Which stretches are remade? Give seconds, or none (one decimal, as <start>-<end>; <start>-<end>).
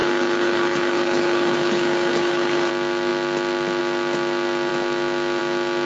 0.0-2.7